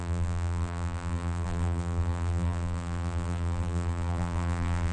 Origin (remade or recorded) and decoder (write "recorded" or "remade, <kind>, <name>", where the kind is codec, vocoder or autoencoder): remade, vocoder, BigVGAN v2